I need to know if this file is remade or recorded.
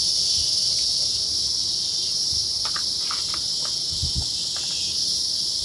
recorded